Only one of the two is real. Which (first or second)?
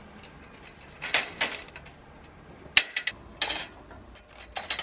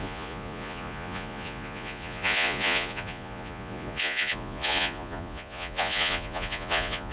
first